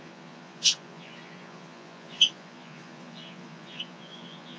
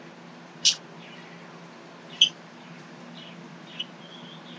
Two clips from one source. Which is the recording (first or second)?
second